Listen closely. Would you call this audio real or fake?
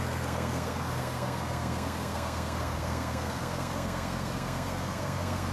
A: fake